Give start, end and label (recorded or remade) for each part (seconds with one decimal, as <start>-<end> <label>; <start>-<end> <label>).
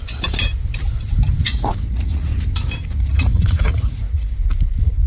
0.0-1.4 recorded; 1.4-2.3 remade; 2.3-2.9 recorded; 2.9-4.3 remade; 4.3-5.1 recorded